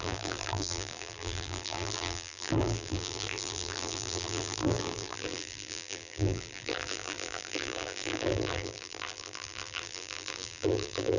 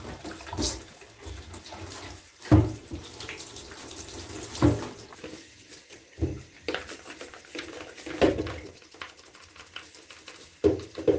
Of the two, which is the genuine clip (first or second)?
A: second